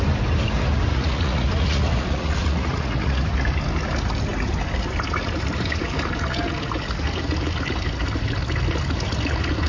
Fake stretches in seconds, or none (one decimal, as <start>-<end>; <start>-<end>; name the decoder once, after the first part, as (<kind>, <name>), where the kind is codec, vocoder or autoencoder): 0.9-3.2 (vocoder, Vocos)